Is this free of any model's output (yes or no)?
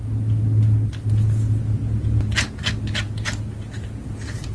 yes